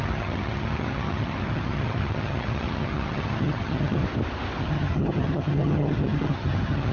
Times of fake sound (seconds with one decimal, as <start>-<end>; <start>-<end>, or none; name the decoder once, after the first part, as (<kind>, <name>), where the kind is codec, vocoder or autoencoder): 0.0-4.0 (vocoder, HiFi-GAN); 4.6-6.9